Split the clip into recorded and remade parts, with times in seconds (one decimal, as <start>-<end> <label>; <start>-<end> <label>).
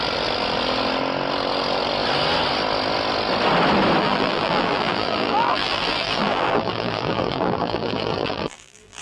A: 0.0-4.0 recorded; 4.0-9.0 remade